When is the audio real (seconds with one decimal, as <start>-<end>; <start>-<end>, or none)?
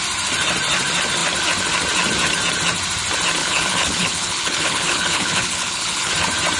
0.0-3.4; 6.1-6.6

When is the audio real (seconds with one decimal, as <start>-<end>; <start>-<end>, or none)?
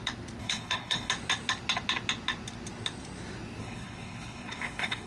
0.0-0.4; 1.1-3.6